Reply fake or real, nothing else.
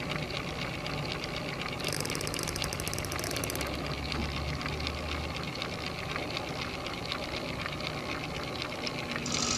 real